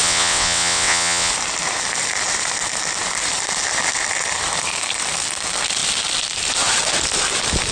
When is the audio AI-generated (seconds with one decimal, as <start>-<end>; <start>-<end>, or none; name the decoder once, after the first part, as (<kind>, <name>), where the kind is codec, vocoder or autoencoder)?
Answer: 0.0-1.3 (vocoder, WaveNeXt)